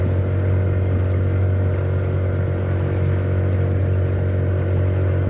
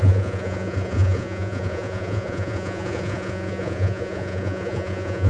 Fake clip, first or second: second